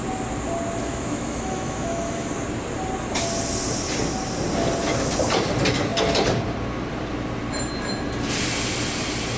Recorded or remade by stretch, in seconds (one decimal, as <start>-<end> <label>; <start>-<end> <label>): 0.0-0.8 recorded; 0.8-2.3 remade; 2.3-9.4 recorded